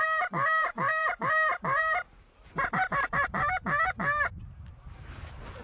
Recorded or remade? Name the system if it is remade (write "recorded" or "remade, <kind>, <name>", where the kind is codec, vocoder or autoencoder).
remade, vocoder, BigVGAN v2